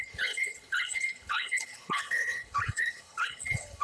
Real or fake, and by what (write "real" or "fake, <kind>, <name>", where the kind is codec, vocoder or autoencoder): fake, codec, HILCodec